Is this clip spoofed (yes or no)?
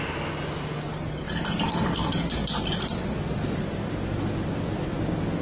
no